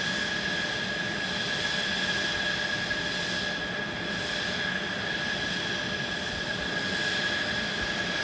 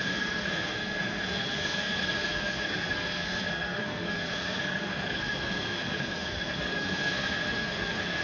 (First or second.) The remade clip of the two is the second